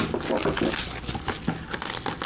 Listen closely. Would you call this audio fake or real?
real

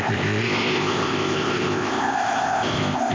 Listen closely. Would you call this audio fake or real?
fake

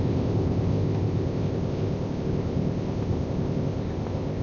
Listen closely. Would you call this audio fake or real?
fake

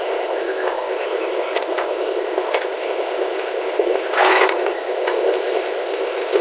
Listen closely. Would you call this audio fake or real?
fake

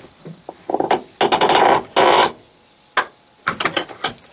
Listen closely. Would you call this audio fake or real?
real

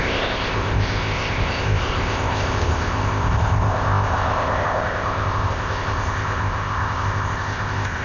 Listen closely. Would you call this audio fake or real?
fake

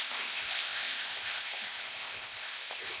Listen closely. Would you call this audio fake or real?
fake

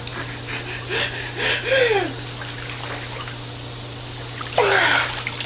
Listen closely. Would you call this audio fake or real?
real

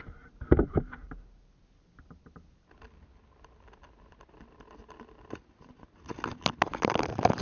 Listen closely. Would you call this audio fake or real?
real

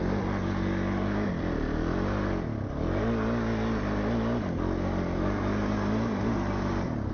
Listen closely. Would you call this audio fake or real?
real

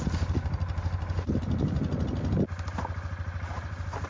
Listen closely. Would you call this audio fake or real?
real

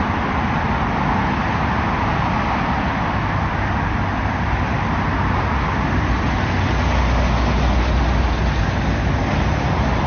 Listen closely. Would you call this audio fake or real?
real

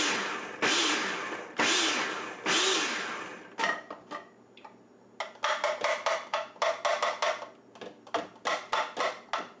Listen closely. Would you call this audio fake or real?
real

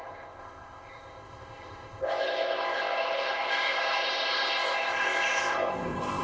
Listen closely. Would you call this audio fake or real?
fake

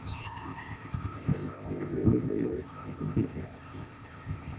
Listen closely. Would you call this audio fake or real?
fake